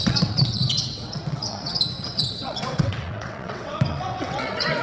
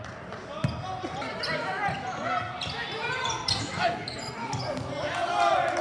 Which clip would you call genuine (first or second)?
second